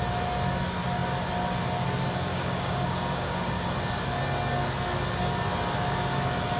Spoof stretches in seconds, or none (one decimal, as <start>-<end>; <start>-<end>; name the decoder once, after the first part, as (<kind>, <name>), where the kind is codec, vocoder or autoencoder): 2.3-3.7 (codec, DAC)